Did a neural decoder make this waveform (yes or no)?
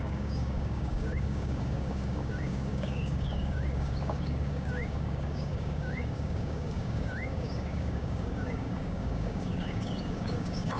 yes